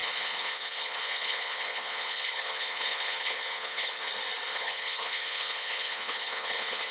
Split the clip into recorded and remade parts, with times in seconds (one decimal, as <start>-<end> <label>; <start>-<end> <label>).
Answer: 0.0-4.1 remade; 4.1-4.5 recorded; 4.5-6.9 remade